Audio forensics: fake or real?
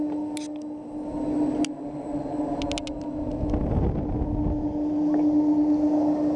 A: real